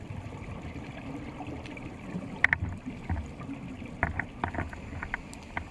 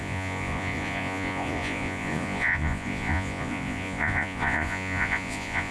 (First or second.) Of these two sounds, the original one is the first